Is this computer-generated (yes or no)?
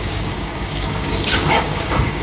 yes